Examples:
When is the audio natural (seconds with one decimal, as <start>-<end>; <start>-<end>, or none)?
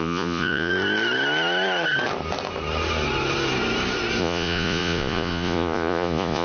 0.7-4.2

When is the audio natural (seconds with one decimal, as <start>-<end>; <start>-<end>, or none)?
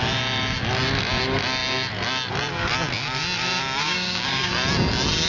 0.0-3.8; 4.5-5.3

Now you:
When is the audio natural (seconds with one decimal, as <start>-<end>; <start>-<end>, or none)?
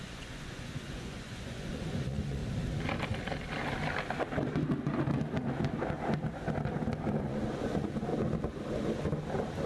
2.4-7.2; 8.1-9.7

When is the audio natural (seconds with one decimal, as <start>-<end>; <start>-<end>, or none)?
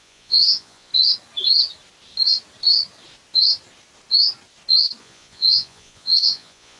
0.9-5.0